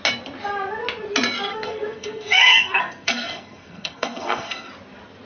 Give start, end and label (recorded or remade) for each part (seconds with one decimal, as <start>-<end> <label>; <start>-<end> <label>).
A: 0.0-1.5 recorded; 1.5-4.7 remade; 4.7-5.3 recorded